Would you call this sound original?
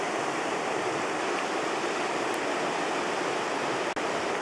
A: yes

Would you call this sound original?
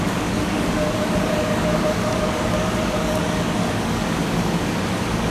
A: no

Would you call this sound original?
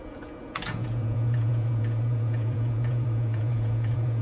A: no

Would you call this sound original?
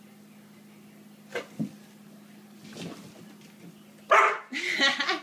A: yes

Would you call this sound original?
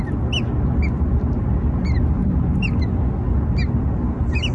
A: yes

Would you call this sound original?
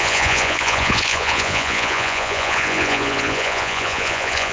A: no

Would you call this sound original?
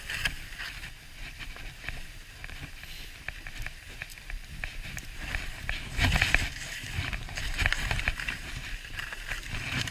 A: no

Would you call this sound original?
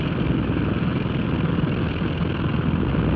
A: yes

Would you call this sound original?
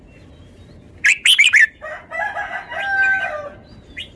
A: yes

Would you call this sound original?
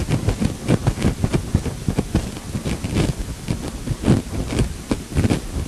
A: yes